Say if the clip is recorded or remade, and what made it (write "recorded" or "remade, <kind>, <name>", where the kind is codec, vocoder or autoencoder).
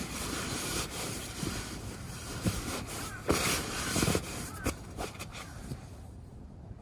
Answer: remade, vocoder, BigVGAN v2